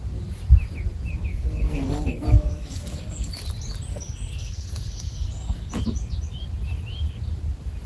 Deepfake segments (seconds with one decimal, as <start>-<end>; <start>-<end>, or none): 1.3-3.3; 3.9-5.7